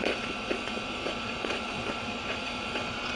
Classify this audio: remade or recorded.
remade